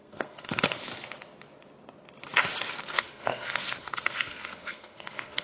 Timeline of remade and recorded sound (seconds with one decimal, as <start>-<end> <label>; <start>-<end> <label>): 0.0-0.9 remade; 0.9-2.8 recorded; 2.8-5.4 remade